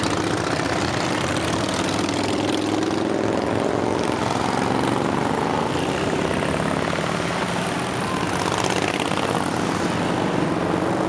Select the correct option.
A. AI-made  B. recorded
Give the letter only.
B